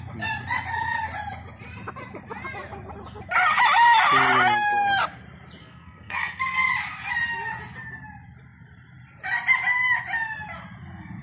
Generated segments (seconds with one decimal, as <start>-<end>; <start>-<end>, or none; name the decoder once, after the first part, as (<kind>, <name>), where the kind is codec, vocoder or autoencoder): 5.6-6.7 (codec, SNAC)